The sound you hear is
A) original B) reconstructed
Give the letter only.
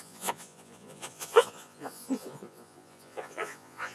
B